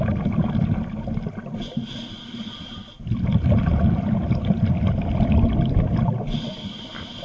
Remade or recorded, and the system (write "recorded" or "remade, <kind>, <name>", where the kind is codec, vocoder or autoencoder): recorded